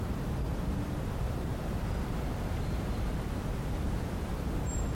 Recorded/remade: remade